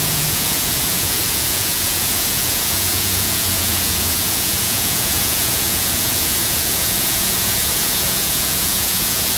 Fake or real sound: fake